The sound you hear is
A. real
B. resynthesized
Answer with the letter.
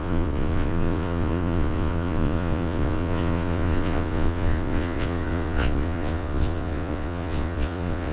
B